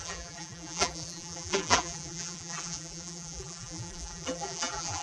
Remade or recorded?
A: remade